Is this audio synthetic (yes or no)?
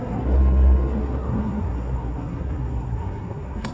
yes